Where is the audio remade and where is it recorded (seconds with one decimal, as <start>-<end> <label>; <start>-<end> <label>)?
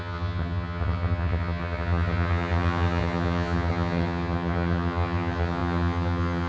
0.0-6.5 remade